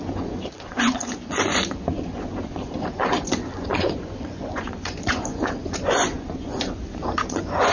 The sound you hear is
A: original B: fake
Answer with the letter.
B